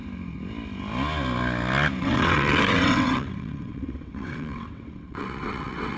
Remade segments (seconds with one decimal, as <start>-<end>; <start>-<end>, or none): 2.0-6.0